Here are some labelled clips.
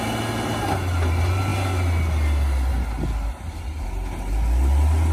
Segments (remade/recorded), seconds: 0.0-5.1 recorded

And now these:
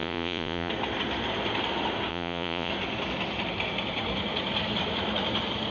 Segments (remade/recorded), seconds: 0.0-0.7 remade; 0.7-2.1 recorded; 2.1-2.7 remade; 2.7-5.7 recorded

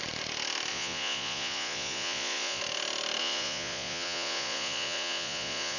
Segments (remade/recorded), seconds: 0.0-0.7 recorded; 0.7-2.6 remade; 2.6-3.2 recorded; 3.2-5.8 remade

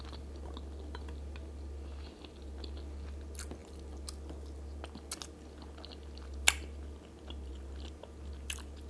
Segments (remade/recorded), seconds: 0.0-8.9 recorded

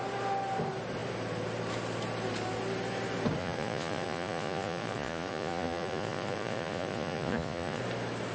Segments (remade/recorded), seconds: 0.0-3.4 recorded; 3.4-7.8 remade; 7.8-8.3 recorded

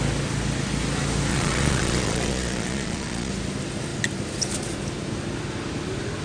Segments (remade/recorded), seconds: 0.0-1.3 recorded; 1.3-3.3 remade; 3.3-6.2 recorded